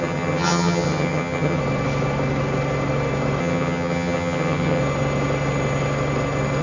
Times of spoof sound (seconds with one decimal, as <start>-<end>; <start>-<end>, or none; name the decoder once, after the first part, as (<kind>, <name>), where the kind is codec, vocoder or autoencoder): 0.0-1.6 (vocoder, HiFi-GAN); 3.4-4.8